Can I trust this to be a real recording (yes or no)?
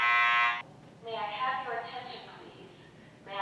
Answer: yes